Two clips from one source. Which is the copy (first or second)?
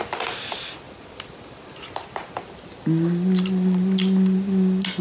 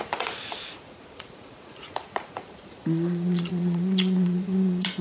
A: second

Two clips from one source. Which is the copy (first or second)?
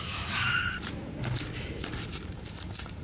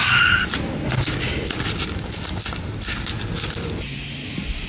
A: first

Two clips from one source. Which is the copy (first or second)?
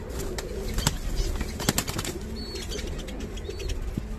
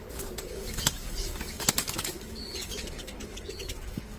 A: second